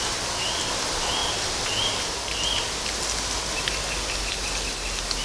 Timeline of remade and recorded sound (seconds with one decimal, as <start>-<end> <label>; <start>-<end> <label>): 0.0-5.2 recorded